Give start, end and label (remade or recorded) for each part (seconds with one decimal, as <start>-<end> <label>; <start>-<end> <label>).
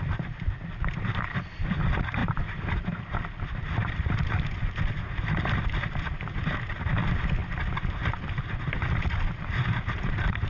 0.0-10.5 recorded